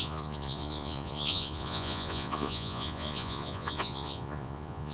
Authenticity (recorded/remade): remade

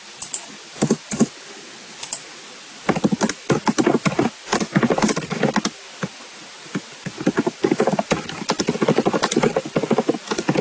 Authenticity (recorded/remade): recorded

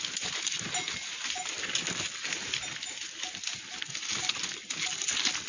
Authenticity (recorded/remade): recorded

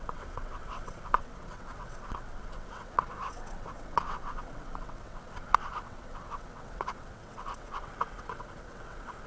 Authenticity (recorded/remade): remade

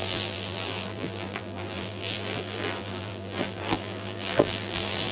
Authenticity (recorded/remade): remade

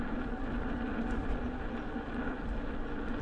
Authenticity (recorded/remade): recorded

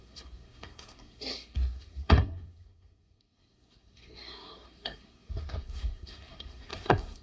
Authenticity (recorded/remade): remade